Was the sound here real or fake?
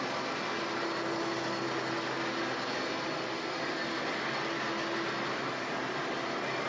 real